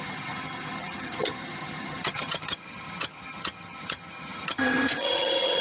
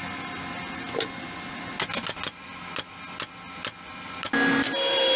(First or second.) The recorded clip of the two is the second